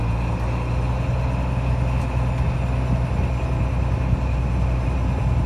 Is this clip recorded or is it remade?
recorded